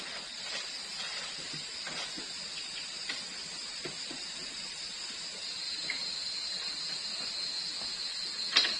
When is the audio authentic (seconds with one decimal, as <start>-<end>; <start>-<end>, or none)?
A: 0.0-8.8